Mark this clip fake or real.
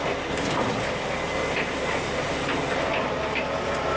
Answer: real